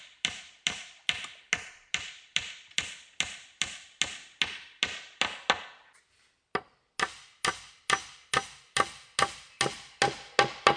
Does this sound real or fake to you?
real